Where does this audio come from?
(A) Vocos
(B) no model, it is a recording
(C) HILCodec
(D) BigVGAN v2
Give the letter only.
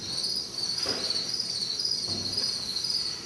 B